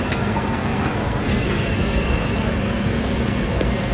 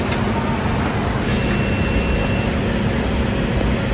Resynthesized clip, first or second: first